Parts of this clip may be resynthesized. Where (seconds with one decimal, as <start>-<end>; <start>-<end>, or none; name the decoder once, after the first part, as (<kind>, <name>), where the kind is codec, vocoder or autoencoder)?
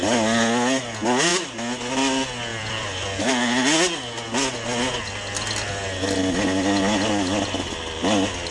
2.5-3.3 (vocoder, BigVGAN v2)